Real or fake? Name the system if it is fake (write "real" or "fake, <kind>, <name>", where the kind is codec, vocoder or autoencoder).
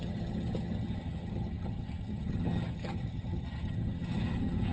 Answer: fake, vocoder, HiFi-GAN